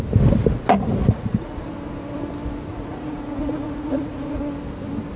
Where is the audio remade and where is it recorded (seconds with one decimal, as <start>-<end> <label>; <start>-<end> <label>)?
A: 0.0-1.0 recorded; 1.0-1.6 remade; 1.6-2.7 recorded; 2.7-4.4 remade; 4.4-5.2 recorded